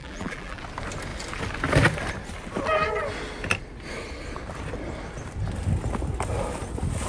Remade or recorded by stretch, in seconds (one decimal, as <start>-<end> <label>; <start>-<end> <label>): 0.0-0.6 remade; 0.6-7.1 recorded